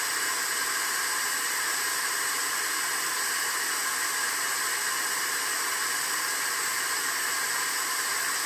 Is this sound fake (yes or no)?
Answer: no